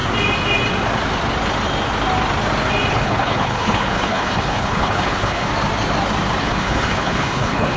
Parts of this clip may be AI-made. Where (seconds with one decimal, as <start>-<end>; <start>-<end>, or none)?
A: 2.9-5.5; 6.4-7.8